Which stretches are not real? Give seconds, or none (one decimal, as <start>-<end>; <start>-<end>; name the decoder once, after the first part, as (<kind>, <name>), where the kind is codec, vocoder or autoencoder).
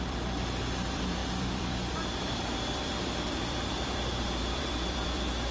0.0-5.5 (vocoder, BigVGAN v2)